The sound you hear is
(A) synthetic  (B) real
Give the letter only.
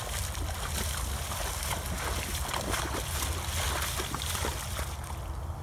B